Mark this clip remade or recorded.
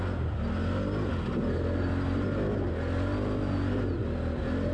recorded